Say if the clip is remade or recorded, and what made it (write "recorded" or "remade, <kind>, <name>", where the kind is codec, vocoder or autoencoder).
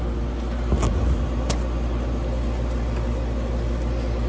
recorded